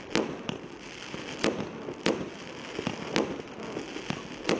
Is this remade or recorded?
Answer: recorded